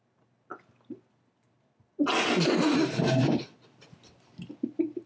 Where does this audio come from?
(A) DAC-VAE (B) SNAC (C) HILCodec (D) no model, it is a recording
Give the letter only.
D